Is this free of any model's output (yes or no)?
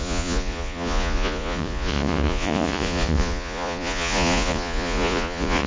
no